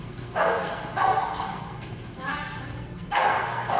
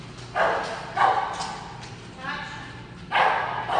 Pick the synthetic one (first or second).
first